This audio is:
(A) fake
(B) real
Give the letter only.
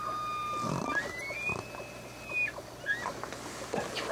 B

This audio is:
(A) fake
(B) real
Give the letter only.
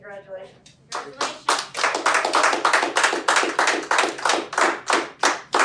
B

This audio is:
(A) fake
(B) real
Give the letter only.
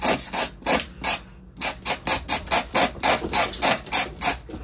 B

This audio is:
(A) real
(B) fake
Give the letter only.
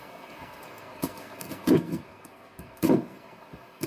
B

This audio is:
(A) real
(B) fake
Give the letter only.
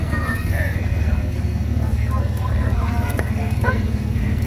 B